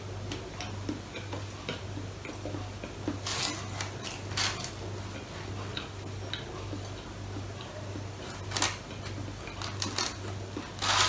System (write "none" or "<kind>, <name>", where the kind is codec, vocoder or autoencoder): none